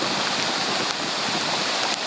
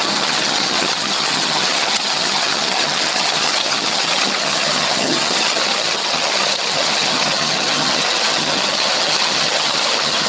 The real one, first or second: first